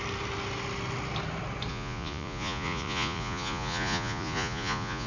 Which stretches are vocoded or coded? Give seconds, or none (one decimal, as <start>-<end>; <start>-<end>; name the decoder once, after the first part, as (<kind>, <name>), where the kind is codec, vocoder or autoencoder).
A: 1.7-5.1 (vocoder, Vocos)